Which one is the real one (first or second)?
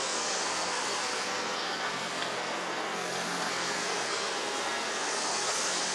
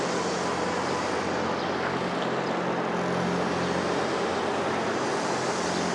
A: second